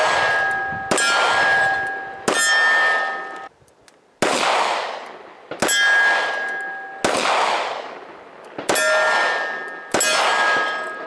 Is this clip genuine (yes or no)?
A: yes